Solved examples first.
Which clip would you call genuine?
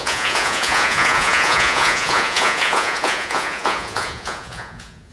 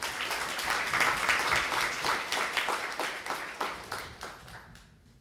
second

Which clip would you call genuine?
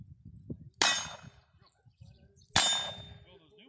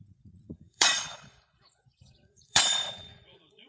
first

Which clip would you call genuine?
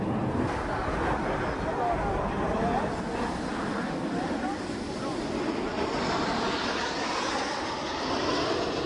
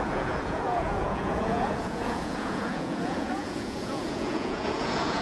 first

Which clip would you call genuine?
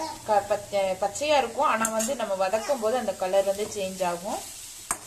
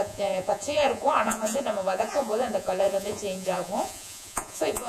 first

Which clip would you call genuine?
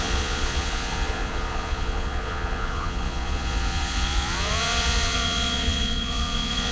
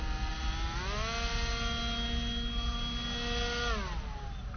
second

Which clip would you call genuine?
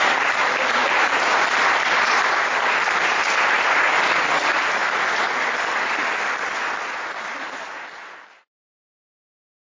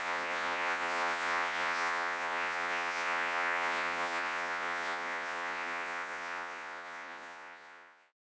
first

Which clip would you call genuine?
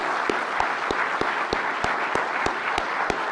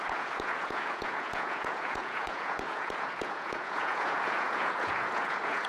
first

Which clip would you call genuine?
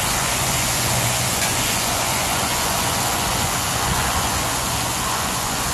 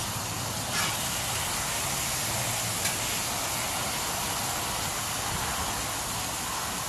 second